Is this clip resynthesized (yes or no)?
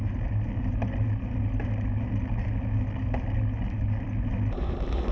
no